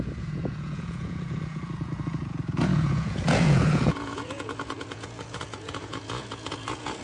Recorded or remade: remade